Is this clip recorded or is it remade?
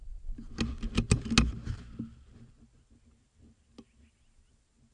recorded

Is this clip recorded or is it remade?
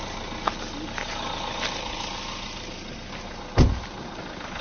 recorded